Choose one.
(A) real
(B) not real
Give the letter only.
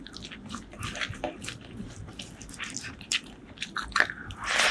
A